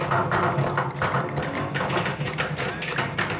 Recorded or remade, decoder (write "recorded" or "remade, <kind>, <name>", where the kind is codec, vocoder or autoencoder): recorded